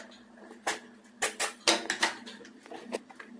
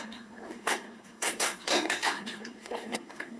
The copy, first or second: second